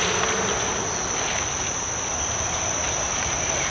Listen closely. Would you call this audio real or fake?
real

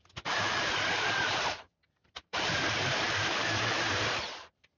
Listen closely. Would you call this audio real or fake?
fake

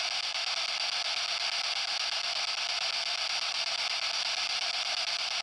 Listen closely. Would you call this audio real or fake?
real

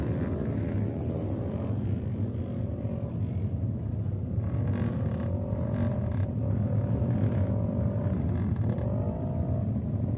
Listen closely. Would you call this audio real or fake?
real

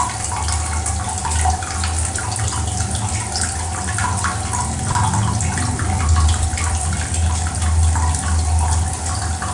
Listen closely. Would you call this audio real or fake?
real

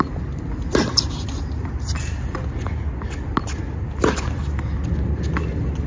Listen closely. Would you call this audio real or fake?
real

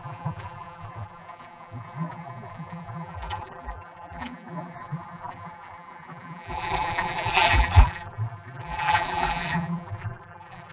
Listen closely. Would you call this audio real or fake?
fake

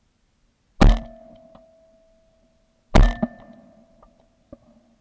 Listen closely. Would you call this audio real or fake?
real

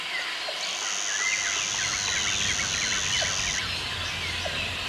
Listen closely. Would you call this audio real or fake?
real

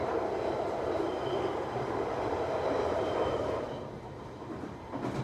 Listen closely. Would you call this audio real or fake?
fake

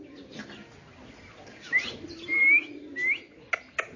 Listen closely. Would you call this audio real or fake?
real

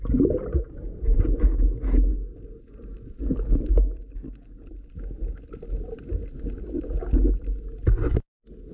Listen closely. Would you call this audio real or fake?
real